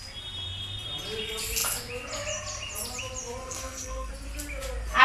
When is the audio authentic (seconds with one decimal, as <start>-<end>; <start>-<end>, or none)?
0.0-3.4; 4.1-5.0